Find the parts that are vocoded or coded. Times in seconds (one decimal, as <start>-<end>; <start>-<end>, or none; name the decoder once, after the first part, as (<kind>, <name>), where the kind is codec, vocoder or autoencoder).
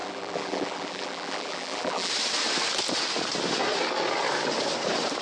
0.0-2.1 (vocoder, BigVGAN v2)